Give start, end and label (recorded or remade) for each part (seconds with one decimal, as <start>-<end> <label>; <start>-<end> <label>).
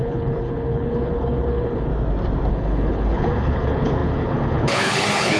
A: 0.0-1.9 remade; 1.9-2.5 recorded; 2.5-5.4 remade